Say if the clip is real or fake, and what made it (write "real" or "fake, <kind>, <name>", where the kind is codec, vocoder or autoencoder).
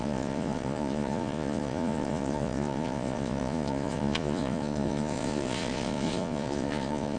fake, vocoder, Vocos